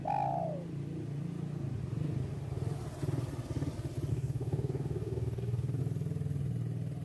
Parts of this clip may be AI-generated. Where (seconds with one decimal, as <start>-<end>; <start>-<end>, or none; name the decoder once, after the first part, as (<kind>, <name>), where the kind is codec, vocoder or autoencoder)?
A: 4.1-5.8 (codec, DAC)